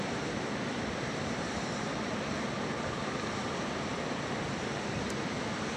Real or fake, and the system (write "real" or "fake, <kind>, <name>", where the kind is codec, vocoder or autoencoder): fake, vocoder, BigVGAN v2